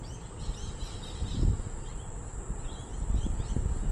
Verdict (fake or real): real